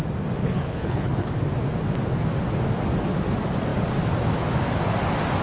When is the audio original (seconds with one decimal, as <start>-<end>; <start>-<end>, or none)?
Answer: 0.0-0.4; 1.3-5.4